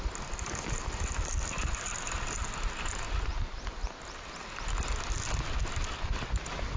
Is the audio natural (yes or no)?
yes